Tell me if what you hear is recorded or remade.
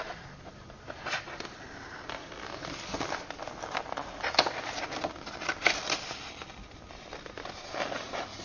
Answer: recorded